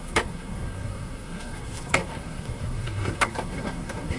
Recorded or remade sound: remade